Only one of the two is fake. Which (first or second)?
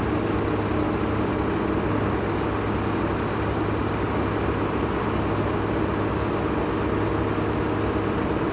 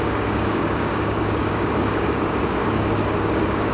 second